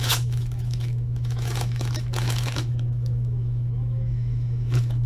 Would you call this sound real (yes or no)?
no